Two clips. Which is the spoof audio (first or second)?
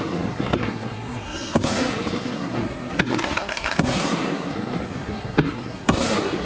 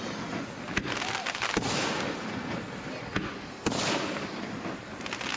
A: first